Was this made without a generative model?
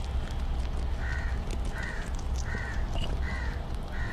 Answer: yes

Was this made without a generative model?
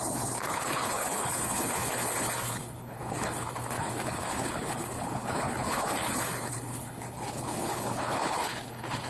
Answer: no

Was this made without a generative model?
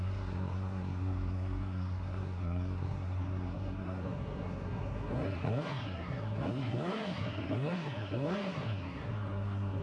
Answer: no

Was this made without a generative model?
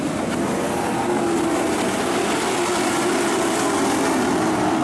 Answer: yes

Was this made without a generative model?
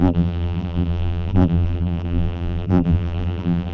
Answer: no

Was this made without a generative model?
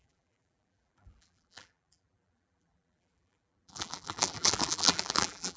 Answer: no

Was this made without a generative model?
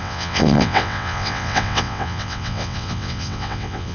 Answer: no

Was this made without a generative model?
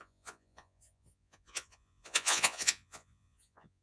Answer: no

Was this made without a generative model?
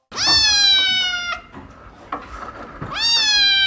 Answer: yes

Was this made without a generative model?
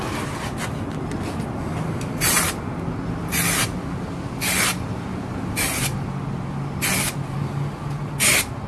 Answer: yes